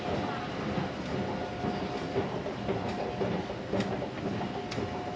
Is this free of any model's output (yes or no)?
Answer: yes